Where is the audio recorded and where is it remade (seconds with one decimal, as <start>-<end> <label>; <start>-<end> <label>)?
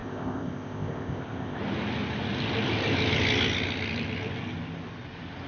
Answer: 0.0-1.6 remade; 1.6-5.5 recorded